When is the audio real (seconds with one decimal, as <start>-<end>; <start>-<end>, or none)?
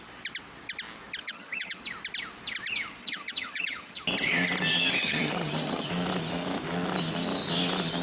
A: 0.0-1.2; 1.8-3.0; 4.0-5.0; 5.9-8.0